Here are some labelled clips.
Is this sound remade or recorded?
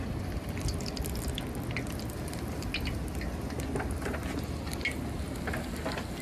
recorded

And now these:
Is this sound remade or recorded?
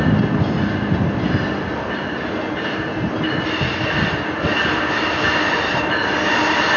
recorded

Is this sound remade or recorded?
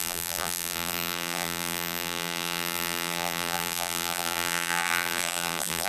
remade